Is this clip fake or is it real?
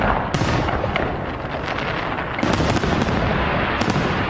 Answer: real